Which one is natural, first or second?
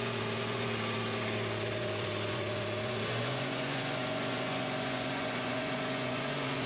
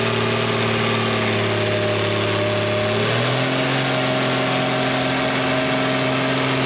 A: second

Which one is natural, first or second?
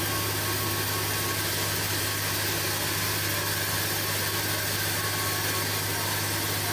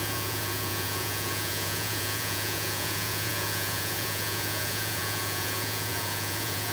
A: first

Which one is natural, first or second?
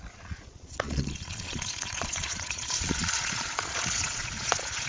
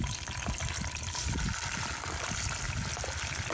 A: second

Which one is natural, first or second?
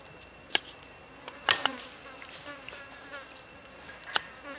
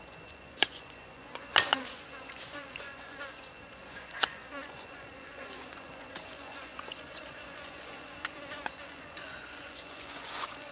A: first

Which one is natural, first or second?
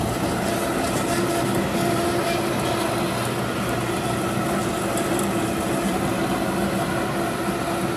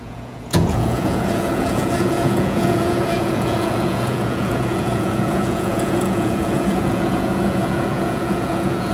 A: first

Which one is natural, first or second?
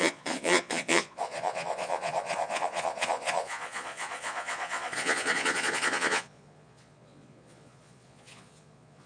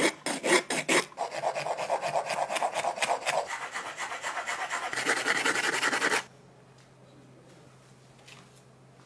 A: second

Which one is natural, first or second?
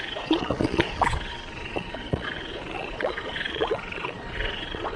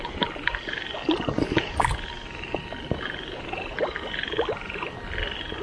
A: second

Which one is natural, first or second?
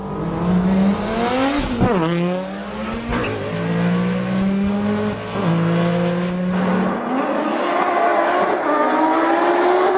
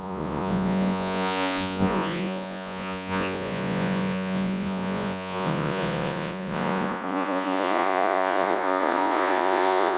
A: first